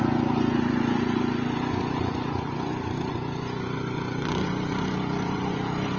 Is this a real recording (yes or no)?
no